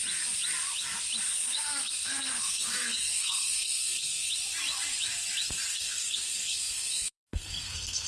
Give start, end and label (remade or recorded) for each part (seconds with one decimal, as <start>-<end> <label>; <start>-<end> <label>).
0.0-1.3 recorded; 1.3-4.3 remade; 4.3-5.7 recorded; 5.7-8.1 remade